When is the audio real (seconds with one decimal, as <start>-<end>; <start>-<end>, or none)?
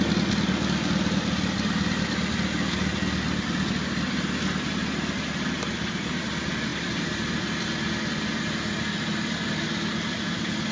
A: 0.0-10.7